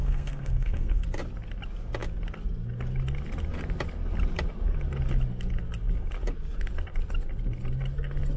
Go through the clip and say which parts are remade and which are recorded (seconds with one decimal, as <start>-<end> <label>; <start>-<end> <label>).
0.0-1.0 remade; 1.0-8.4 recorded